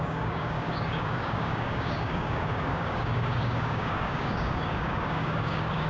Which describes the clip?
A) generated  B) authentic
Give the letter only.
A